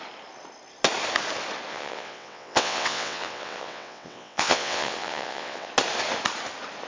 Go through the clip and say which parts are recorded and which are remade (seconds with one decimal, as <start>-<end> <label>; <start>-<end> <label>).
0.0-1.7 recorded; 1.7-5.7 remade; 5.7-6.9 recorded